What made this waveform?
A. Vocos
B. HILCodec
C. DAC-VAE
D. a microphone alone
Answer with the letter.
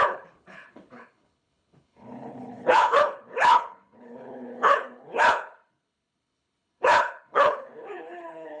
B